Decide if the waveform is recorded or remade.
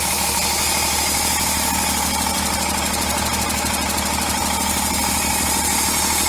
recorded